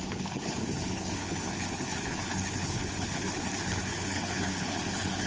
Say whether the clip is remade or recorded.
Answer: remade